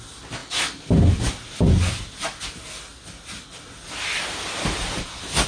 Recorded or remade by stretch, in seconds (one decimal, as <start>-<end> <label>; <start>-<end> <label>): 0.0-2.9 recorded; 2.9-4.9 remade; 4.9-5.5 recorded